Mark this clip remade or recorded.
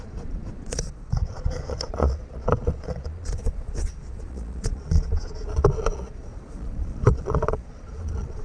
remade